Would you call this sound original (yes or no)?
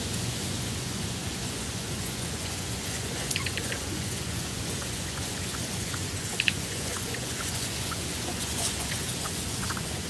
no